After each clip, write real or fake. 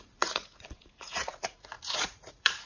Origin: fake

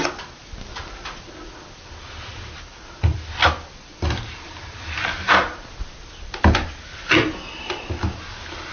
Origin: real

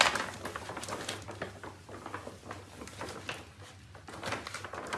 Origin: real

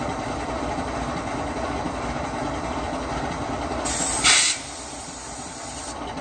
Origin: real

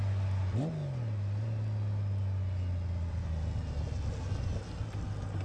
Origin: real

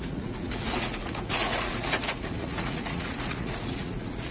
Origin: fake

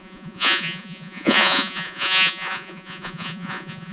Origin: fake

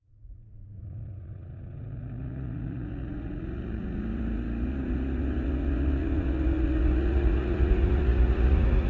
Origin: fake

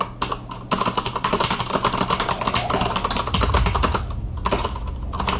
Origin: real